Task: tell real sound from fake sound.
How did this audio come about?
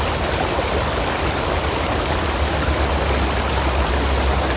real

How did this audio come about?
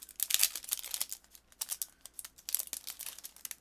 real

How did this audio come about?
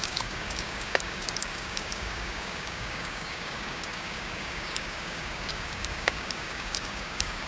fake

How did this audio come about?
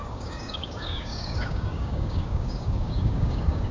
fake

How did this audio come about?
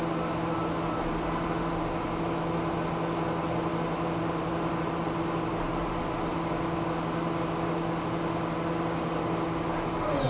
real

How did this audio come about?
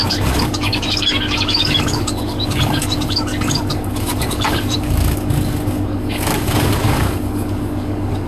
fake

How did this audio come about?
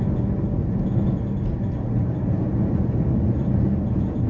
real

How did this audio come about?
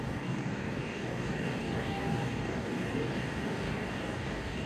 fake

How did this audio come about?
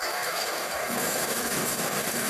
fake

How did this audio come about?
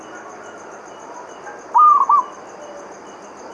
real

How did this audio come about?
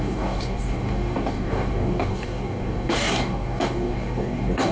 fake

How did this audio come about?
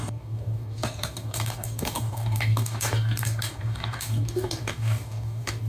fake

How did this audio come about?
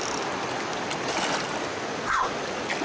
real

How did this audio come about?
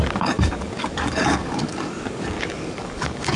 fake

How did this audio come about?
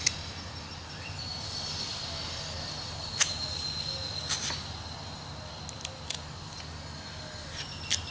real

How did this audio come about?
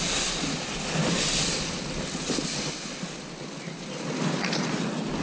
real